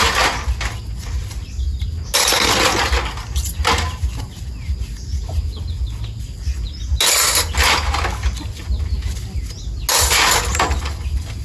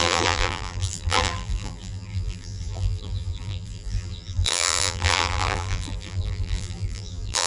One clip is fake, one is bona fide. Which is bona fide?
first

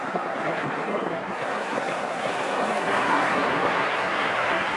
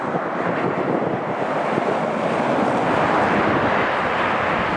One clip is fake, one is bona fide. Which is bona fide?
second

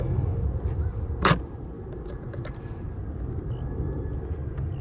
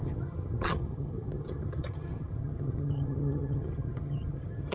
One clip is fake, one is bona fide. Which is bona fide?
first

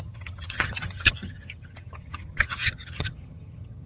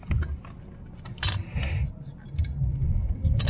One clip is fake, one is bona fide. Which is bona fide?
second